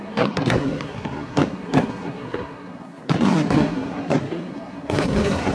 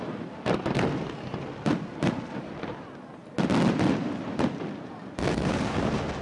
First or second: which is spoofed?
first